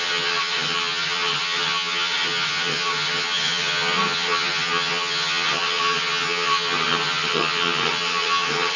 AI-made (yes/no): yes